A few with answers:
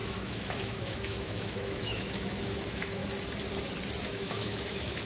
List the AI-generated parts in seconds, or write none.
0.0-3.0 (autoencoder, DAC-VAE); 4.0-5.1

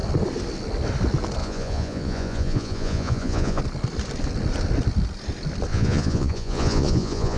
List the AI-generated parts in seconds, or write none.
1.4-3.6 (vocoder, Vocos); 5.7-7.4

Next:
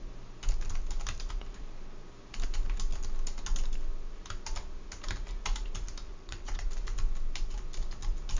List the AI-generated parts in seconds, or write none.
6.1-6.7 (vocoder, WaveNeXt)